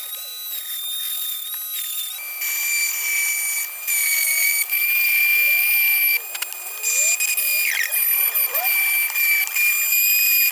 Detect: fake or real real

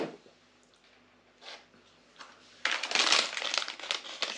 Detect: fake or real real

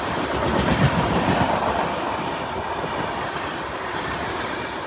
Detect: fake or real fake